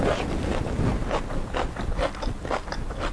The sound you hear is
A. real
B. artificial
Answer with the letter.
A